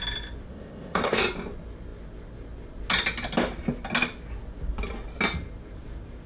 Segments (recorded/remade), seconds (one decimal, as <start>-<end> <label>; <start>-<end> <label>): 0.0-0.5 recorded; 0.5-1.2 remade; 1.2-6.3 recorded